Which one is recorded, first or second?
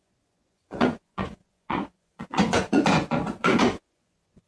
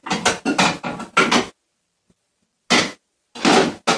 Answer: second